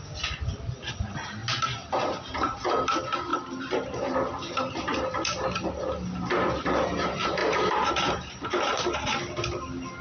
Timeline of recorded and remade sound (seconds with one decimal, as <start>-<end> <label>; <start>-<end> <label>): 0.0-3.3 recorded; 3.3-4.7 remade; 4.7-7.4 recorded; 7.4-8.6 remade; 8.6-10.0 recorded